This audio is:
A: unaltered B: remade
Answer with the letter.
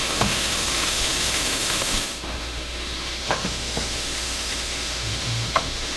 B